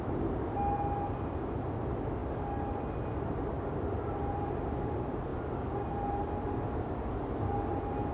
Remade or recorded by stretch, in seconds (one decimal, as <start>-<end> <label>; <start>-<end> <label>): 0.0-8.1 recorded